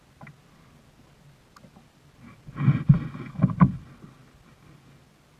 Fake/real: real